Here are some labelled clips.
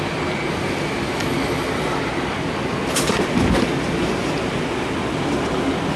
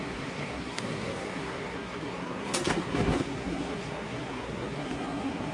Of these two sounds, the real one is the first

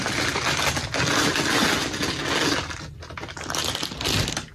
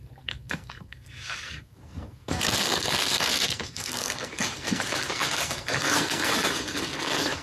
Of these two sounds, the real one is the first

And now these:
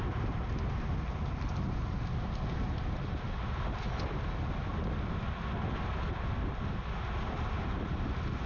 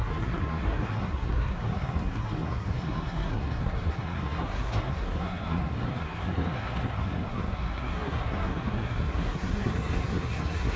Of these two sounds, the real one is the first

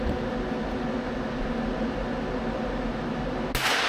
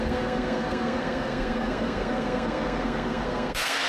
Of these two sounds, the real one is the first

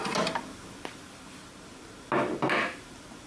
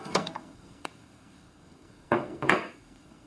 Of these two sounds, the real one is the first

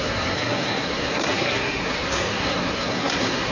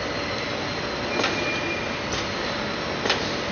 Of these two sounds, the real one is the second